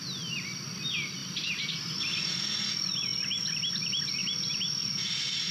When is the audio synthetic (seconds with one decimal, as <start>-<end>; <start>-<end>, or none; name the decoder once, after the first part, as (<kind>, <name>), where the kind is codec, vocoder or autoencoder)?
none